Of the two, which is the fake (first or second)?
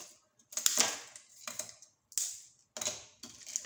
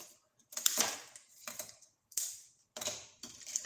second